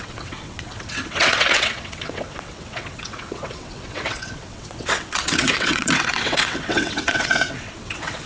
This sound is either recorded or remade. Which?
remade